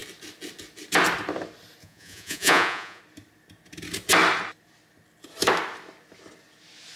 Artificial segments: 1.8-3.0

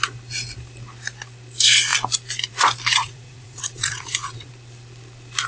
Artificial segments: 3.0-4.5

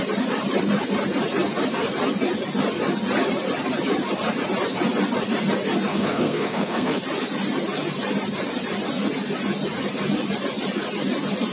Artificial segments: 5.9-7.0

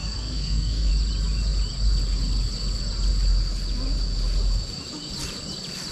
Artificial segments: 0.0-0.9

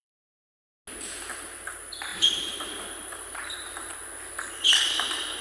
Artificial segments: 0.0-0.4; 1.1-3.9; 4.6-5.4